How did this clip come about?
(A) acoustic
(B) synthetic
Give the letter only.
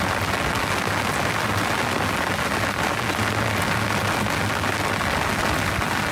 A